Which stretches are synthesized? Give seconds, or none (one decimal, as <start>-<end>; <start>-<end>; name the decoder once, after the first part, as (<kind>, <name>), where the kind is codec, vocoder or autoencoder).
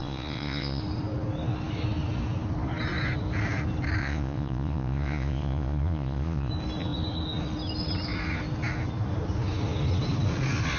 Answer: 0.0-0.8 (vocoder, Vocos); 4.0-6.5